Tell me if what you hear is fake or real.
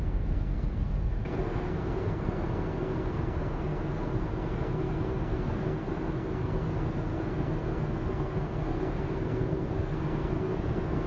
fake